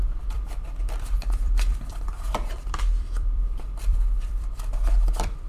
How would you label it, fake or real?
fake